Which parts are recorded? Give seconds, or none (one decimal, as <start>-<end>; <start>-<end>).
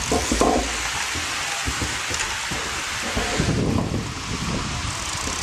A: 0.0-1.6; 3.1-5.4